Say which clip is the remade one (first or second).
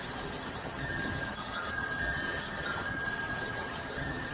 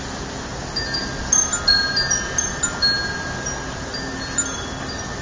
first